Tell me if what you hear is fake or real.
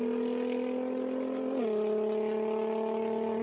real